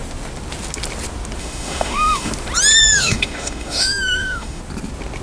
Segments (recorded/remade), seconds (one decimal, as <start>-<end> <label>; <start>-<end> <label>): 0.0-1.4 recorded; 1.4-2.3 remade; 2.3-2.8 recorded; 2.8-4.6 remade; 4.6-5.2 recorded